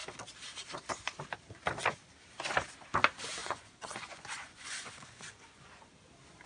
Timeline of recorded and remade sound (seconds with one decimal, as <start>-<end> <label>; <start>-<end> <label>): 0.0-3.4 recorded; 3.4-5.9 remade; 5.9-6.5 recorded